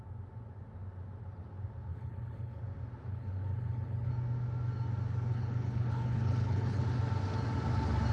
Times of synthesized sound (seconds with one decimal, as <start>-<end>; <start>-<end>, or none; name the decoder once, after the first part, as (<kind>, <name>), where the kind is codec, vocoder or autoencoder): 1.9-2.6 (codec, HILCodec); 3.1-4.1; 5.3-6.8